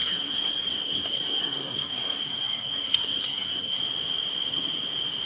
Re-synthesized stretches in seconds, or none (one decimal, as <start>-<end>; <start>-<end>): 0.0-3.8